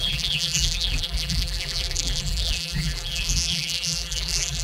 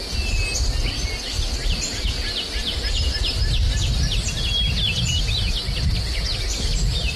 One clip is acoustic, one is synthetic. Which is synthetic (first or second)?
first